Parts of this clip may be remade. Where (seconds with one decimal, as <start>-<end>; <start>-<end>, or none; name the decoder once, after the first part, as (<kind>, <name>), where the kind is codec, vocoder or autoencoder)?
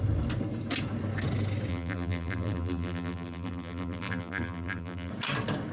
1.7-5.1 (vocoder, BigVGAN v2)